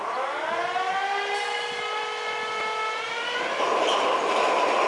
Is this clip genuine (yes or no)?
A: yes